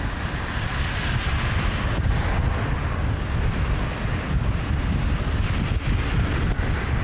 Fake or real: real